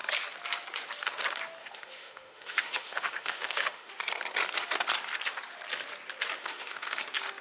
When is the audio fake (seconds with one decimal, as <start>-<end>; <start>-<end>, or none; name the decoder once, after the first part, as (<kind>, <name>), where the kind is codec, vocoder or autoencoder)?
1.6-3.9 (autoencoder, DAC-VAE); 6.4-7.0